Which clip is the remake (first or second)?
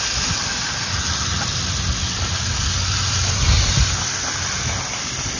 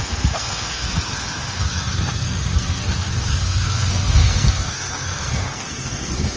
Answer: second